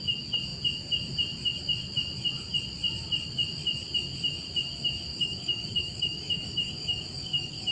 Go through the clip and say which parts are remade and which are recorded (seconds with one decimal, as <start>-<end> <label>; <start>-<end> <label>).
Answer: 0.0-5.1 recorded; 5.1-7.7 remade